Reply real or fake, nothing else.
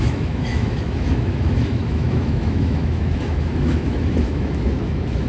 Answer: fake